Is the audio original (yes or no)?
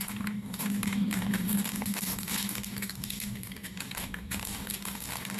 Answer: no